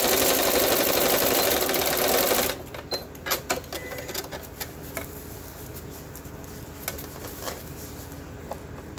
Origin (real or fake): real